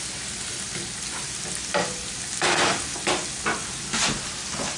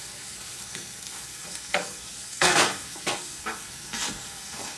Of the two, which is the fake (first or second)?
second